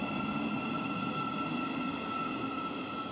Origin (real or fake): real